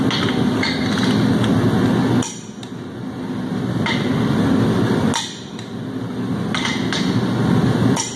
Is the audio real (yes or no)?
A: yes